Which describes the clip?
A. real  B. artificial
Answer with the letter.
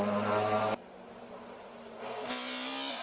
A